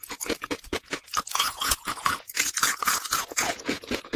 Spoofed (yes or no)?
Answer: yes